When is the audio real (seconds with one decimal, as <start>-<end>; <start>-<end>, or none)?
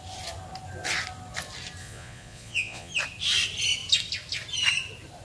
0.0-1.8; 2.9-5.2